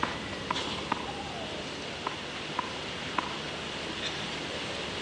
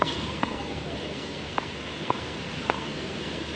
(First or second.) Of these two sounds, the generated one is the second